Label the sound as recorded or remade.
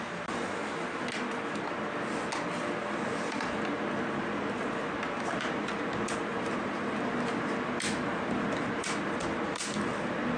recorded